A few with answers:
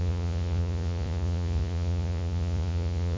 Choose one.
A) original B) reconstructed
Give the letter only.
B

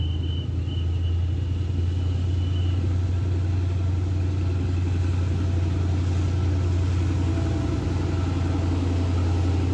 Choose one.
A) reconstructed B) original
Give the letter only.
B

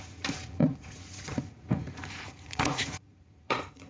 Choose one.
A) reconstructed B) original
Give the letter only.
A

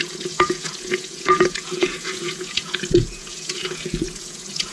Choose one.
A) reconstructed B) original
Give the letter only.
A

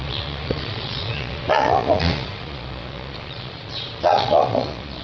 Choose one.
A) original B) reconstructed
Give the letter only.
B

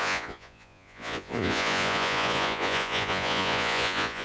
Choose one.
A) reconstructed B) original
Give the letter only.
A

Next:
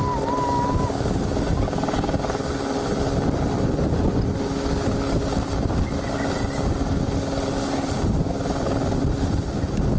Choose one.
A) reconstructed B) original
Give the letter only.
B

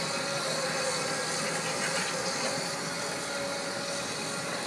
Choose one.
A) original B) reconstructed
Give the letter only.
A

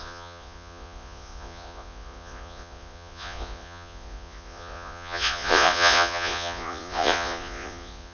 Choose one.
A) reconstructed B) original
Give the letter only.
A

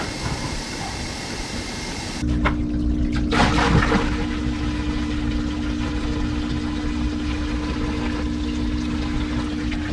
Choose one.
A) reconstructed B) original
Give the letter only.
B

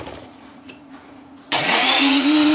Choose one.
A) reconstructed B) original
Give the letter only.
A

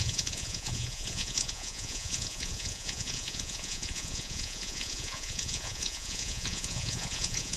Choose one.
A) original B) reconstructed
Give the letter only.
B